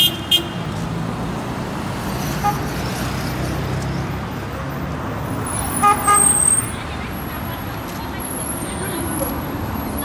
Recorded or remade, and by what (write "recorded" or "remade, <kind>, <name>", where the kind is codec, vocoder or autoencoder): recorded